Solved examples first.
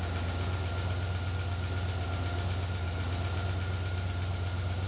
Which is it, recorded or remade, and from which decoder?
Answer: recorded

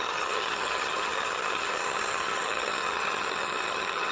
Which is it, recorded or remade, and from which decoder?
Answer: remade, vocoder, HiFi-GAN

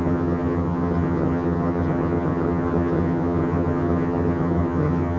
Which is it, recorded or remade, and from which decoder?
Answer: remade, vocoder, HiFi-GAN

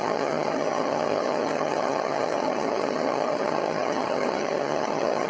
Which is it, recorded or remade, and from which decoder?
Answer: remade, vocoder, HiFi-GAN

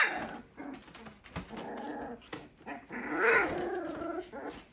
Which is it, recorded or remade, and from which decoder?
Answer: recorded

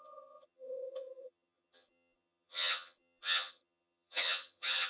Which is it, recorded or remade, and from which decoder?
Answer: remade, vocoder, HiFi-GAN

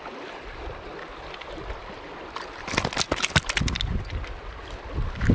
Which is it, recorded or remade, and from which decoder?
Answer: recorded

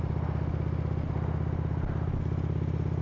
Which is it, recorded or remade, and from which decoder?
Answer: recorded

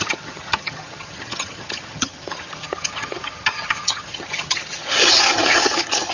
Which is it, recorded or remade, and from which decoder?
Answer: remade, vocoder, HiFi-GAN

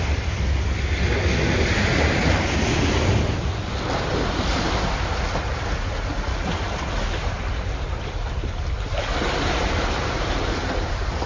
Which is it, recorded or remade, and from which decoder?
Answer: recorded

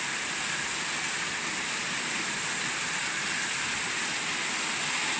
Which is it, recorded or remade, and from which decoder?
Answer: recorded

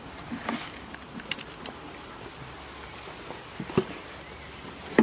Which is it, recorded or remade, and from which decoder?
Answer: recorded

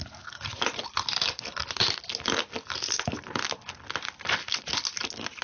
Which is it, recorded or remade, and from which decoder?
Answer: recorded